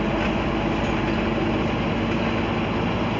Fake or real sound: real